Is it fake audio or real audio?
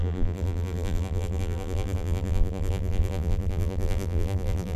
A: fake